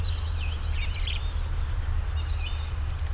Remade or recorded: recorded